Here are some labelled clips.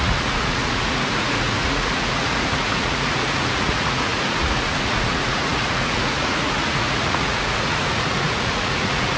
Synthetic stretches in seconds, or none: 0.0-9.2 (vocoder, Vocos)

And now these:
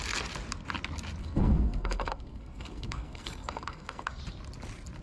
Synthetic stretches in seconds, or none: 1.2-4.2 (codec, SNAC)